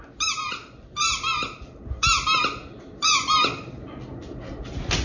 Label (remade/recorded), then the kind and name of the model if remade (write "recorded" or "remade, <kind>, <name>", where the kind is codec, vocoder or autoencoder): recorded